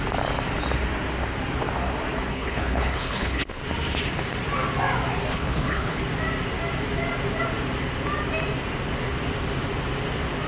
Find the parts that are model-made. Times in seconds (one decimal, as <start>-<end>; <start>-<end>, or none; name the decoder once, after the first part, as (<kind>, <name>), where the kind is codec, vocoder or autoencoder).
2.3-3.6 (codec, HILCodec); 5.3-6.0